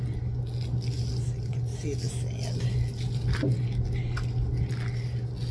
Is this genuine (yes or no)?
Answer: yes